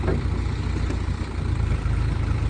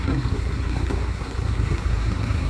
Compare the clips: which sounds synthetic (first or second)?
second